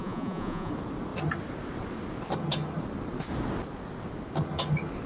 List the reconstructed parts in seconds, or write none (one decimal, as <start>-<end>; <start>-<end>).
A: 0.0-0.7